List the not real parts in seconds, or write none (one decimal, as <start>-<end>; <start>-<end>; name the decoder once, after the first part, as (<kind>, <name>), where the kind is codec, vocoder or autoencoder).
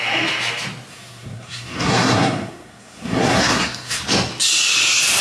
0.9-4.0 (codec, SNAC)